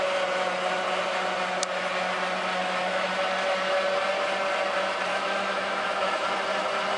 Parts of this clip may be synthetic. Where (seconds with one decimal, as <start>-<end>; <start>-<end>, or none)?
2.6-3.1; 5.1-6.1